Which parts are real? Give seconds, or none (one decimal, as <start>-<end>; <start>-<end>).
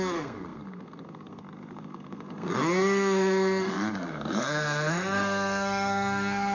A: none